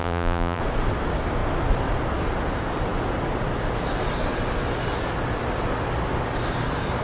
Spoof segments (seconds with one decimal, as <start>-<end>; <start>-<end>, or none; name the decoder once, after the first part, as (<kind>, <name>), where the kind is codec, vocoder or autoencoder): 0.0-0.6 (vocoder, BigVGAN v2)